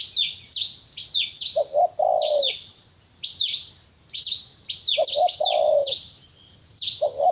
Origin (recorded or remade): recorded